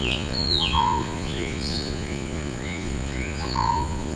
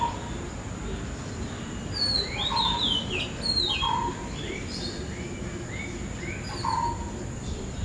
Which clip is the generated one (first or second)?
first